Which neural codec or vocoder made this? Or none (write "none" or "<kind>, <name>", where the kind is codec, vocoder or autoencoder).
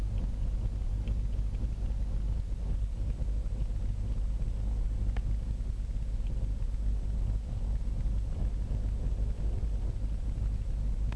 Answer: none